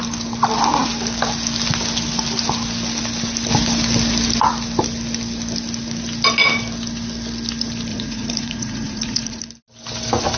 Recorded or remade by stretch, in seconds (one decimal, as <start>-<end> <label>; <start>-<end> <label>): 0.0-7.9 recorded; 7.9-9.4 remade; 9.4-10.4 recorded